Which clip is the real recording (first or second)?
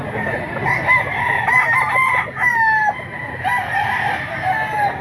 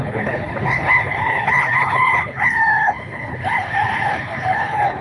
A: first